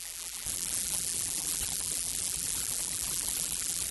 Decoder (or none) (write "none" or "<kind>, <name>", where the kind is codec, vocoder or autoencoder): vocoder, BigVGAN v2